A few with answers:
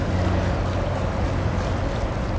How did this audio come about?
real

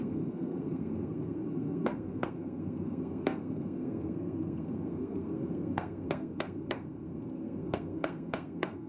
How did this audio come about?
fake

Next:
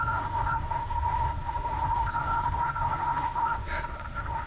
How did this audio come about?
fake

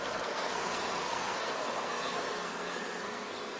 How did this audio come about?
fake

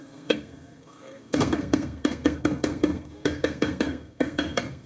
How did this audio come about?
fake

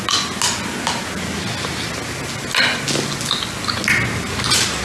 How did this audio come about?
real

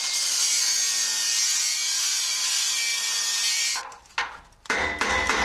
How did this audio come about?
real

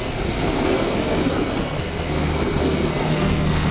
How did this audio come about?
fake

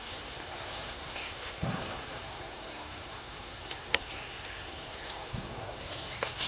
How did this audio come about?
fake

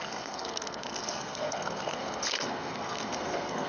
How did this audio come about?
fake